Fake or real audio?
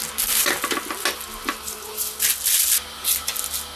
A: real